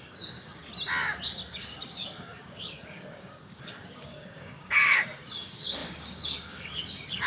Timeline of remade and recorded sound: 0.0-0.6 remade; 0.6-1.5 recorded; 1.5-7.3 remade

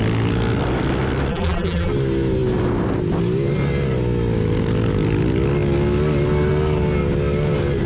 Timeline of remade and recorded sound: 0.0-1.3 recorded; 1.3-1.9 remade; 1.9-7.9 recorded

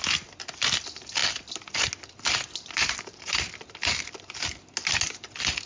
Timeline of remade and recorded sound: 0.0-5.7 recorded

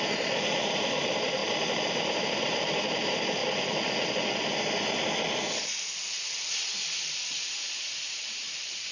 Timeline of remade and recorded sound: 0.0-1.4 remade; 1.4-1.9 recorded; 1.9-3.4 remade; 3.4-8.1 recorded; 8.1-8.9 remade